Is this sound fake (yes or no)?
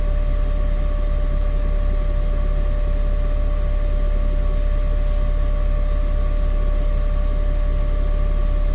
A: no